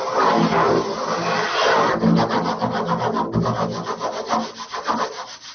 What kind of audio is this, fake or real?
real